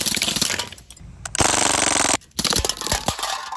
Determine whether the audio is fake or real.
real